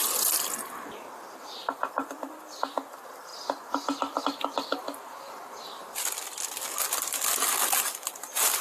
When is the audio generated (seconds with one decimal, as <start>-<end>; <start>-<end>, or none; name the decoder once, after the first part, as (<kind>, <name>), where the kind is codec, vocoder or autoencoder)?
none